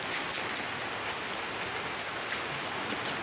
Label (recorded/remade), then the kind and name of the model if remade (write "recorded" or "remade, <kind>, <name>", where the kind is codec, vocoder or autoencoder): recorded